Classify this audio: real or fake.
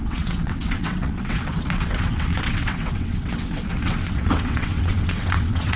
fake